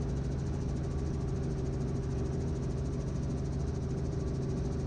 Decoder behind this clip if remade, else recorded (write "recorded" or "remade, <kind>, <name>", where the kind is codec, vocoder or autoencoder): recorded